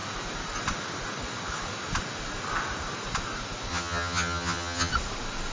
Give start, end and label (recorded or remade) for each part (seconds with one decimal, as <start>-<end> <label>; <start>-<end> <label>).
0.0-3.7 recorded; 3.7-4.9 remade; 4.9-5.5 recorded